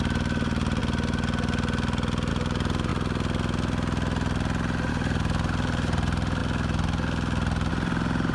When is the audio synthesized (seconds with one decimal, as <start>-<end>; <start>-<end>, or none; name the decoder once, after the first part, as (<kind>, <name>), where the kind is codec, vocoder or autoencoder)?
0.0-0.8 (vocoder, BigVGAN v2); 2.3-2.9; 4.9-6.4; 7.7-8.3